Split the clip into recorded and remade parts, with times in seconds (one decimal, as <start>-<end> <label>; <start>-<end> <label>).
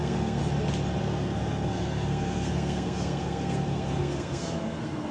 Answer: 0.0-0.4 remade; 0.4-1.0 recorded; 1.0-5.1 remade